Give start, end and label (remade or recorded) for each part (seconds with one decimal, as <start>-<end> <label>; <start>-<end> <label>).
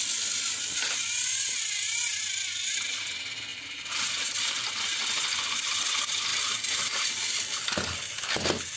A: 0.0-3.5 recorded; 3.5-4.7 remade; 4.7-6.3 recorded; 6.3-7.1 remade; 7.1-8.8 recorded